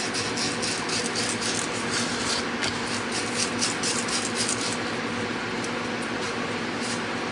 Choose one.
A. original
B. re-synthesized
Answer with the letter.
A